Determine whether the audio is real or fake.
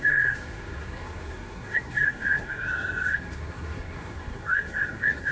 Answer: fake